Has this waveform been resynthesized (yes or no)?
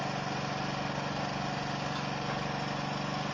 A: no